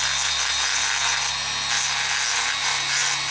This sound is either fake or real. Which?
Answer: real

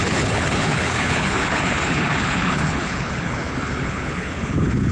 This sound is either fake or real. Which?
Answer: fake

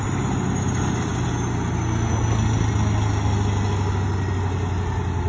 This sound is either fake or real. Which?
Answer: real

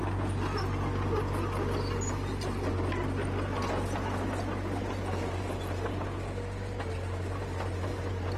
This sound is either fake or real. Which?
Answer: real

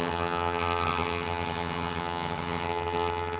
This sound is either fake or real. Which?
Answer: fake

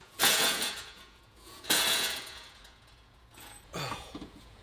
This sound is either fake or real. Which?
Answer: fake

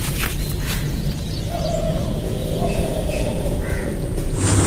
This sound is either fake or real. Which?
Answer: fake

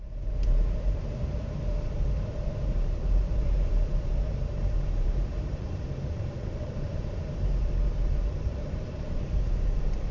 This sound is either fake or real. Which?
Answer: fake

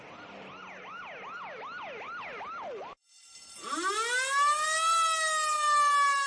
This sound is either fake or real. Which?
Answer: real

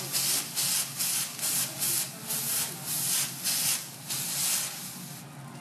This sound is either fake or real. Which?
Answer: real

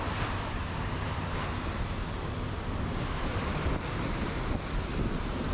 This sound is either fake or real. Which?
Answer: real